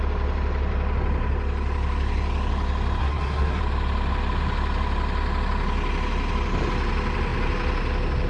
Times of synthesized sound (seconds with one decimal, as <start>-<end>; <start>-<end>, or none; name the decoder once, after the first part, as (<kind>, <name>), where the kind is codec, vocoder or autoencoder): 3.0-3.6 (codec, SNAC)

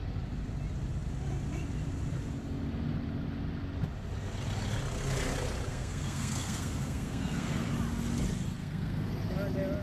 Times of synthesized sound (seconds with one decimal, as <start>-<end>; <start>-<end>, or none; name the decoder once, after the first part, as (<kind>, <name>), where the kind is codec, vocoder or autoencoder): 5.7-7.7 (codec, SNAC); 8.6-9.1

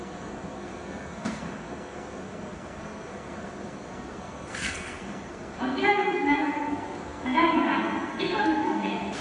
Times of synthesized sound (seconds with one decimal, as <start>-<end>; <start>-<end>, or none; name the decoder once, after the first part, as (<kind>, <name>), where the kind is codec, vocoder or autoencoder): 0.0-9.2 (codec, SNAC)

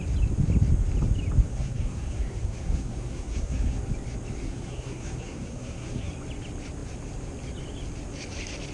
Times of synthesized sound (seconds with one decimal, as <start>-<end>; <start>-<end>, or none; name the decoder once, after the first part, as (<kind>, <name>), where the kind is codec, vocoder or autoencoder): 1.5-3.8 (codec, SNAC); 4.4-6.1

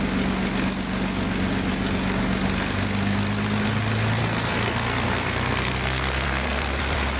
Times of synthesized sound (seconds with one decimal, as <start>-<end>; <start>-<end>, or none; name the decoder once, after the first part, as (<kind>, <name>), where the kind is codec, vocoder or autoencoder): 4.2-6.8 (codec, SNAC)

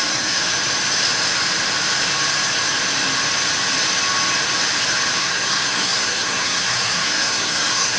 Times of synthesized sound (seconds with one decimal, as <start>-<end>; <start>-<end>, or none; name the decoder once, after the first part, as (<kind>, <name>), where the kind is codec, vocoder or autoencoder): 0.0-0.4 (codec, SNAC); 5.2-8.0